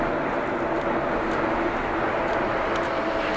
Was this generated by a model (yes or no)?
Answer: no